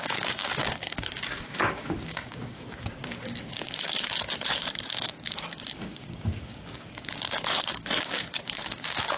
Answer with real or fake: fake